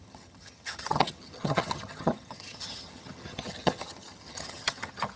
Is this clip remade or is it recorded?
remade